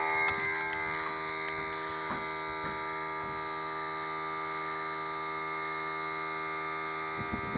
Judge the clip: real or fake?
real